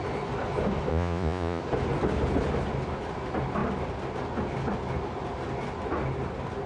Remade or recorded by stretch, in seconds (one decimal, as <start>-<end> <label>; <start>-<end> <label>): 0.0-0.9 recorded; 0.9-1.6 remade; 1.6-6.7 recorded